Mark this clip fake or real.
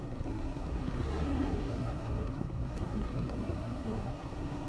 fake